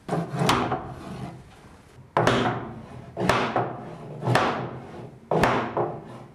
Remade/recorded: recorded